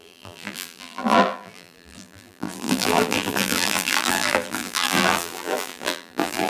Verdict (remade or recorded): remade